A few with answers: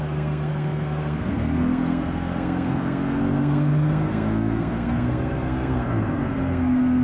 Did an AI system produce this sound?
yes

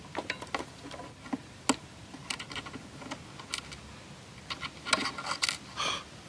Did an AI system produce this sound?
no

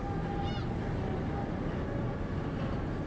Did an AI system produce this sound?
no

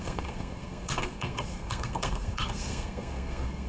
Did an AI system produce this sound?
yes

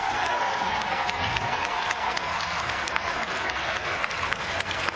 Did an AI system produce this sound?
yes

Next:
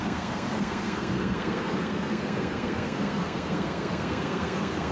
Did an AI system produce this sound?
yes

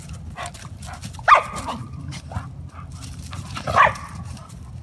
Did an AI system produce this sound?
no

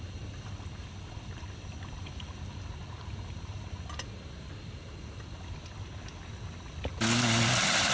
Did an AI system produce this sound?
no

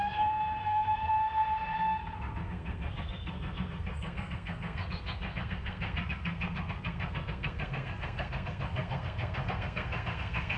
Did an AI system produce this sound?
yes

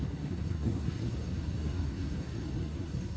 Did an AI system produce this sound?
yes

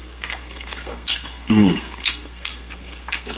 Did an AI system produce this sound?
yes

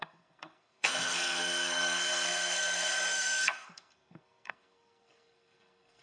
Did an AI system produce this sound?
yes